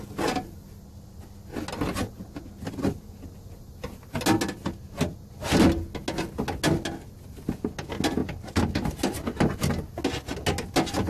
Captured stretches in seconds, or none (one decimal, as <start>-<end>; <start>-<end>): 0.0-11.1